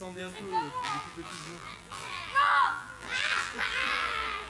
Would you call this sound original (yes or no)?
no